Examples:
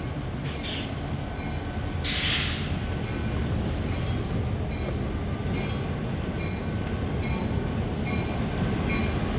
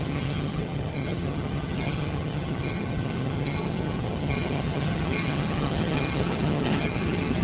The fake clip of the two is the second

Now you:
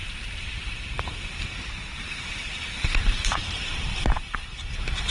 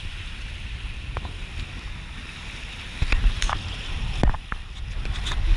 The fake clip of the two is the first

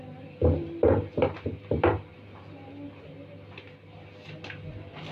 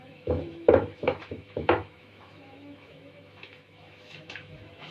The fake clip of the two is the second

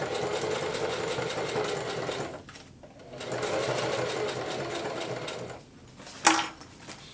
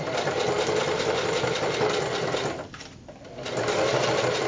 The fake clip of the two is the second